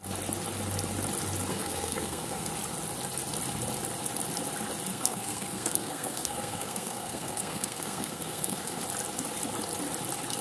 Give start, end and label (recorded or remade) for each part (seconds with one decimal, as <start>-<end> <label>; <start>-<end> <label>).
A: 0.0-1.5 recorded; 1.5-2.5 remade; 2.5-4.9 recorded; 4.9-8.8 remade; 8.8-10.4 recorded

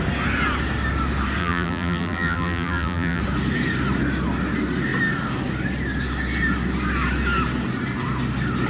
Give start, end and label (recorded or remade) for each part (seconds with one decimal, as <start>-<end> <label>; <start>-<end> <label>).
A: 0.0-1.4 recorded; 1.4-3.2 remade; 3.2-8.7 recorded

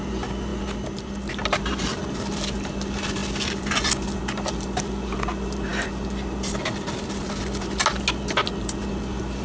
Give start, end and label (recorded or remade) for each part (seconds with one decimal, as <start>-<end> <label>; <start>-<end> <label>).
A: 0.0-9.4 recorded

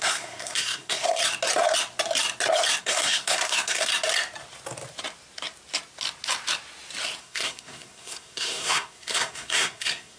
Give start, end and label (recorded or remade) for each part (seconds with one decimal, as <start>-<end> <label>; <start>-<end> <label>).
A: 0.0-1.2 remade; 1.2-2.8 recorded; 2.8-3.9 remade; 3.9-7.2 recorded; 7.2-10.2 remade

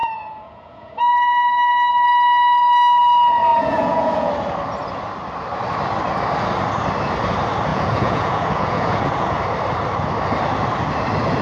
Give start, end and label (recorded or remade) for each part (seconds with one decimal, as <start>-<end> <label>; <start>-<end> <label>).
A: 0.0-1.0 remade; 1.0-3.5 recorded; 3.5-4.3 remade; 4.3-7.7 recorded; 7.7-9.4 remade; 9.4-11.4 recorded

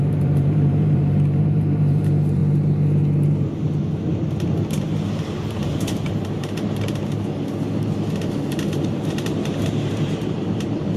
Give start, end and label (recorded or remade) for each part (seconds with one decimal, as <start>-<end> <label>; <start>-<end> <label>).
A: 0.0-2.4 remade; 2.4-6.1 recorded; 6.1-7.0 remade; 7.0-8.2 recorded; 8.2-11.0 remade

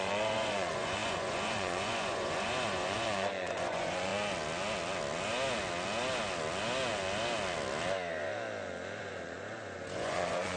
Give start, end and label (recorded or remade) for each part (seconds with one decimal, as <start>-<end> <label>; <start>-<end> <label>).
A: 0.0-4.1 remade; 4.1-9.0 recorded; 9.0-10.6 remade